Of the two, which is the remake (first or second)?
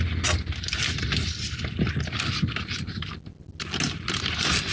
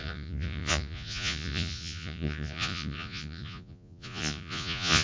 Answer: second